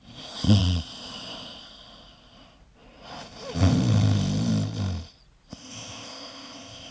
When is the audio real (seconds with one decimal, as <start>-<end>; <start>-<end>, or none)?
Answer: 0.0-5.6